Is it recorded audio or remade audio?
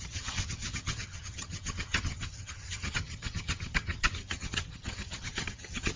remade